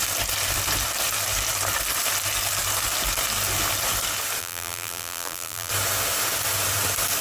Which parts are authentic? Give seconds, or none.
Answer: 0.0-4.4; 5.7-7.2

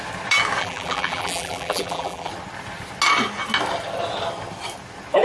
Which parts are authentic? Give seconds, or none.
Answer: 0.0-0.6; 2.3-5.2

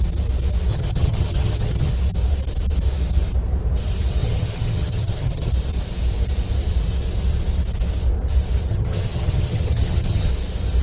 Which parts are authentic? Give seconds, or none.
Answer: 0.0-0.7; 1.9-4.2; 5.5-8.7; 10.3-10.8

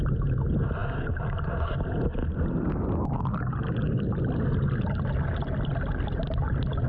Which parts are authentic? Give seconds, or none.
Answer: 0.0-6.9